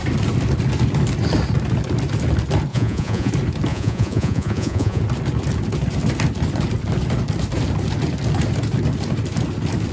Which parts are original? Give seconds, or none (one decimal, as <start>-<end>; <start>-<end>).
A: 0.0-2.7; 3.3-3.7; 5.0-9.9